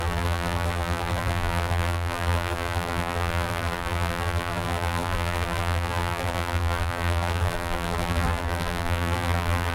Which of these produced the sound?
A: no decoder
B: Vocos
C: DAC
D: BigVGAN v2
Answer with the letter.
D